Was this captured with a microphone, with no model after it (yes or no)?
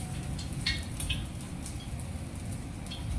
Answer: yes